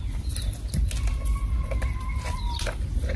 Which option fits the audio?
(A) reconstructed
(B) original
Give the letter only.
B